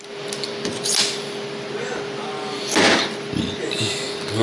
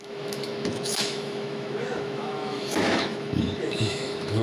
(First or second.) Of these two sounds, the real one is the first